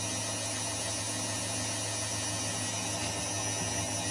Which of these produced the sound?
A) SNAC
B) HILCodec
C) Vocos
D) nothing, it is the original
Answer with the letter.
D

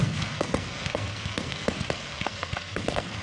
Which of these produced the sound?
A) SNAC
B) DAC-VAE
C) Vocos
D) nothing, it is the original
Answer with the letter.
A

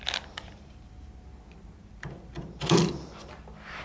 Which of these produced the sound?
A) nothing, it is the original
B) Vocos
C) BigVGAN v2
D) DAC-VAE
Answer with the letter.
A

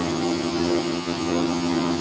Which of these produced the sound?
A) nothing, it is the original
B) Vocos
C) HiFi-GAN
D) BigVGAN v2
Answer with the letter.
C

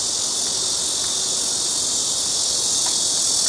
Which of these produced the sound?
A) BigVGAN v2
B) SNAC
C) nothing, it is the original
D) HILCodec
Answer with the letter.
C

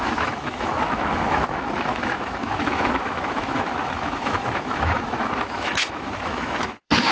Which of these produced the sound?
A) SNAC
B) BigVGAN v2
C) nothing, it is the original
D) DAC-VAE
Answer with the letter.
D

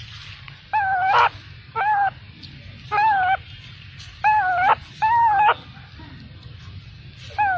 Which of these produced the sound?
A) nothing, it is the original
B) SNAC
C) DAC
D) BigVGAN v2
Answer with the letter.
A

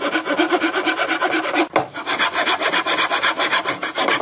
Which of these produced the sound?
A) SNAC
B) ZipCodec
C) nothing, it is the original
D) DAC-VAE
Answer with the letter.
C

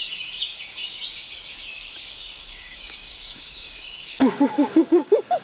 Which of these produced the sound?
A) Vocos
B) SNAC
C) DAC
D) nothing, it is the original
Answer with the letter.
C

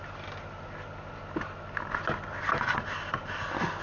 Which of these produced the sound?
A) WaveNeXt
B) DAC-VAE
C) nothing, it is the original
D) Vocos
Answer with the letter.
C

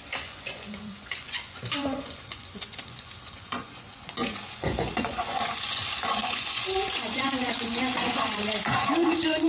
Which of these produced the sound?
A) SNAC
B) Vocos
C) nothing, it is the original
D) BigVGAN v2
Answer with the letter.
B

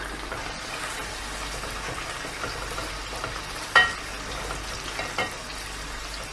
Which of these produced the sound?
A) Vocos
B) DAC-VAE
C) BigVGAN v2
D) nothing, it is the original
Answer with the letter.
D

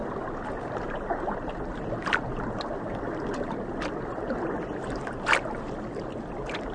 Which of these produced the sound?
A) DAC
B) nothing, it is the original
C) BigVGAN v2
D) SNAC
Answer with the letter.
B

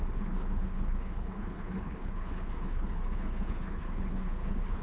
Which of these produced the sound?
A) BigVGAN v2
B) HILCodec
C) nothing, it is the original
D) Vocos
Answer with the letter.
B